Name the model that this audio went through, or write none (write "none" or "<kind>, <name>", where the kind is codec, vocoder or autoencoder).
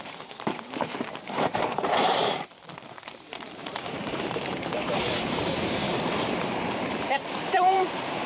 vocoder, BigVGAN v2